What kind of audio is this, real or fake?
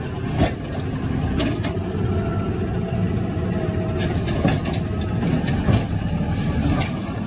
real